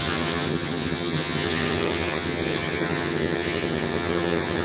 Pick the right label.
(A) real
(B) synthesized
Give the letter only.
B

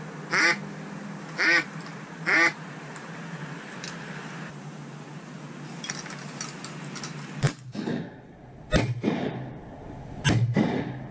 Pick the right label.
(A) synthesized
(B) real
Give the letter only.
B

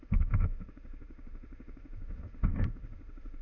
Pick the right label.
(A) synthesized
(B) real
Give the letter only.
A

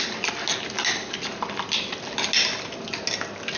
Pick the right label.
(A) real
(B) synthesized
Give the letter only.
A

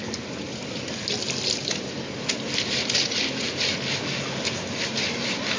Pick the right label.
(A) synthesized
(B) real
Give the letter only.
B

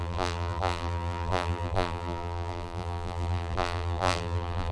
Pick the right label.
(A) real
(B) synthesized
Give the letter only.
B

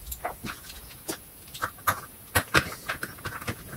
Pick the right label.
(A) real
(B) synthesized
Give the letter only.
B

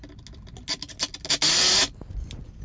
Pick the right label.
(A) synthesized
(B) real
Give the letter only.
B